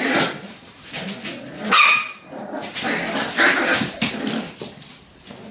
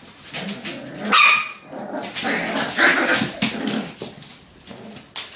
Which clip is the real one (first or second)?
second